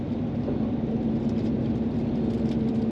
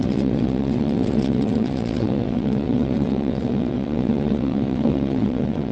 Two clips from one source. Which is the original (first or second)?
first